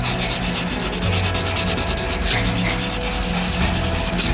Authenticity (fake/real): real